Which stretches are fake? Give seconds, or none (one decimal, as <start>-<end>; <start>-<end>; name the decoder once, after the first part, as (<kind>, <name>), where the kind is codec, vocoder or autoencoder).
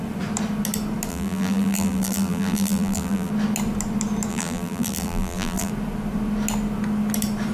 1.1-3.3 (vocoder, BigVGAN v2); 4.3-5.7